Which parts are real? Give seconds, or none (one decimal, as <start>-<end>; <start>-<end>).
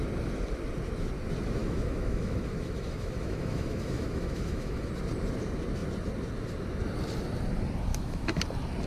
0.0-1.6; 4.9-7.9; 8.4-8.9